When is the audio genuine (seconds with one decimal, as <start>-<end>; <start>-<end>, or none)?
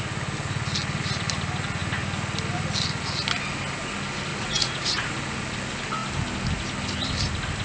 0.0-4.3; 5.1-7.6